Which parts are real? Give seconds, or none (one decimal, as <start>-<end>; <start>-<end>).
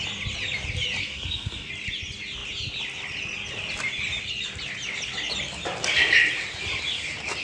0.0-1.0; 1.7-7.4